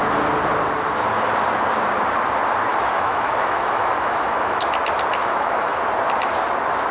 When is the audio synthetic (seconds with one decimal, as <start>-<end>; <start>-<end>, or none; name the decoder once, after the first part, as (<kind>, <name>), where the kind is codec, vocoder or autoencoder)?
2.7-4.6 (autoencoder, DAC-VAE); 5.2-5.8